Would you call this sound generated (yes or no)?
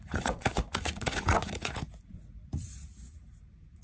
yes